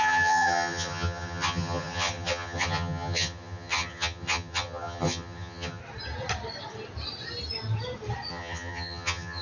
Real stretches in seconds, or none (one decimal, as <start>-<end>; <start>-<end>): 5.8-8.3